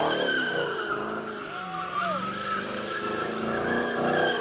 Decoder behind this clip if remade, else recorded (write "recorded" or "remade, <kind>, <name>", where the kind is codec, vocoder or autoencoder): recorded